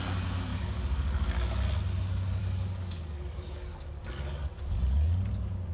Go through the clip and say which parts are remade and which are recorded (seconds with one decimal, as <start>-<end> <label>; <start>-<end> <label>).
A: 0.0-0.5 recorded; 0.5-1.7 remade; 1.7-2.4 recorded; 2.4-4.8 remade; 4.8-5.7 recorded